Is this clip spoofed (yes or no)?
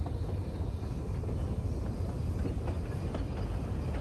no